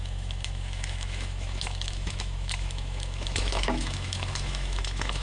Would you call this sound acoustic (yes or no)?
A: no